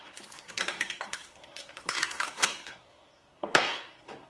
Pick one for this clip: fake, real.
fake